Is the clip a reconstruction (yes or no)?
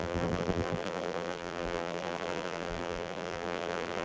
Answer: yes